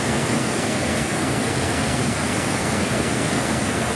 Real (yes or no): no